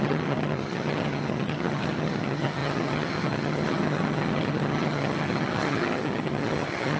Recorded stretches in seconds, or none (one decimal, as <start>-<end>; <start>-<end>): none